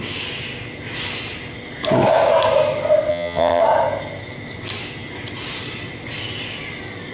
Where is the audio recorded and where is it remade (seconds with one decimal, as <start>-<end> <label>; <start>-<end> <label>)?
0.0-3.1 recorded; 3.1-3.6 remade; 3.6-7.1 recorded